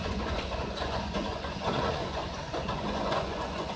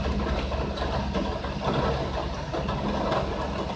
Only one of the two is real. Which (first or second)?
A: second